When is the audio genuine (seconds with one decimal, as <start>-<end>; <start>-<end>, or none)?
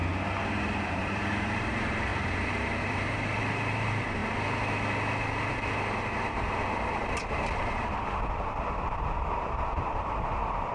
0.0-0.9; 4.2-6.7